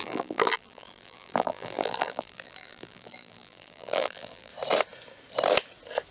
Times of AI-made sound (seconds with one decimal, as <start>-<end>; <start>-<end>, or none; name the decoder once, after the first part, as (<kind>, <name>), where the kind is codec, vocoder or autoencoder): 0.0-4.5 (vocoder, BigVGAN v2)